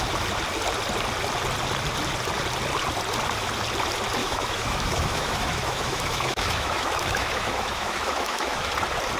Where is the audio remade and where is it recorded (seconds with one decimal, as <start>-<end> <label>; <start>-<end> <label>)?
0.0-4.2 recorded; 4.2-8.7 remade; 8.7-9.2 recorded

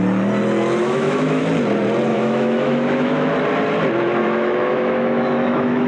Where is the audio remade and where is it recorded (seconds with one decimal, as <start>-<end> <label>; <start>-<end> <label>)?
0.0-0.8 recorded; 0.8-1.4 remade; 1.4-2.1 recorded; 2.1-3.3 remade; 3.3-4.2 recorded; 4.2-5.9 remade

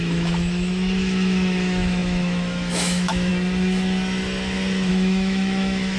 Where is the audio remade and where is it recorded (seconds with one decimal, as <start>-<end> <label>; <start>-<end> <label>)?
0.0-3.3 remade; 3.3-4.9 recorded; 4.9-6.0 remade

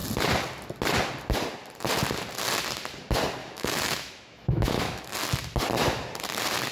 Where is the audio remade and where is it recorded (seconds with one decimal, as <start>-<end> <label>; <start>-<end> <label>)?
0.0-3.4 recorded; 3.4-5.1 remade; 5.1-6.7 recorded